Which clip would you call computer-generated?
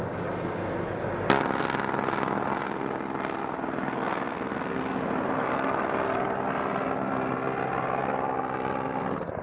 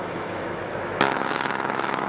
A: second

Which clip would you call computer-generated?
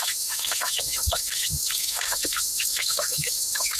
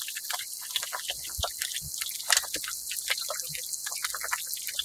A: first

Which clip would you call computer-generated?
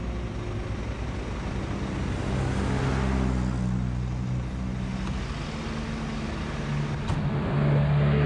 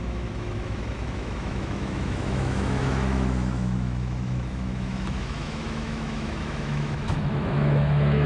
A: second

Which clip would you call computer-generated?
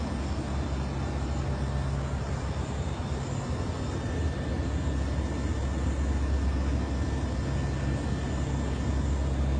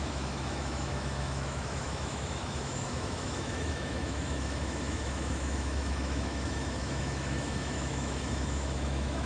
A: second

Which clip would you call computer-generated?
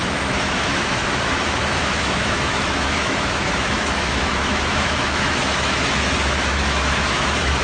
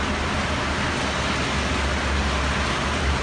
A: first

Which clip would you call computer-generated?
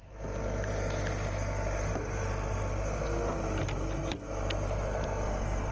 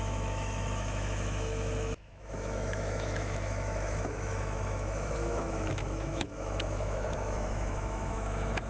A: second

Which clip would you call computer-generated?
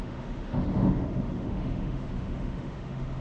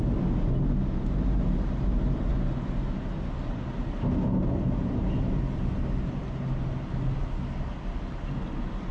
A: first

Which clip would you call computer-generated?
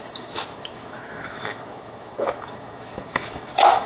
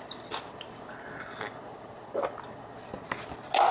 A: first